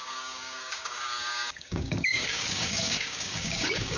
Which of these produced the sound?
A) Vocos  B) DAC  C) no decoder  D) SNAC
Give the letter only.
B